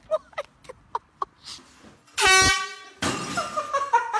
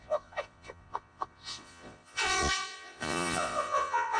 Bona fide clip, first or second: first